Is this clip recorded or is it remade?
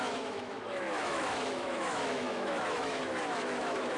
remade